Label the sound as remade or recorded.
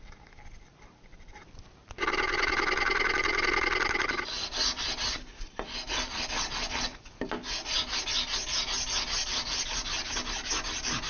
recorded